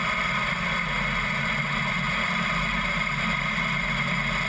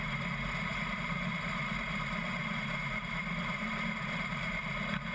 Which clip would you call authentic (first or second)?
first